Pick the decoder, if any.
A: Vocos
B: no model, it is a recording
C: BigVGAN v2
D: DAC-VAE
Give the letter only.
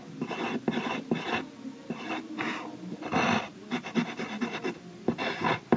B